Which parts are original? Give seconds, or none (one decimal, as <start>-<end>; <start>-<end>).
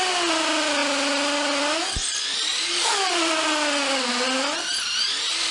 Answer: 0.0-5.5